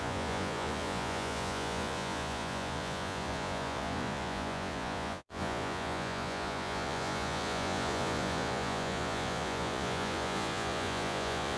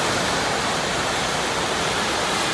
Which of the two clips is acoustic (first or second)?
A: second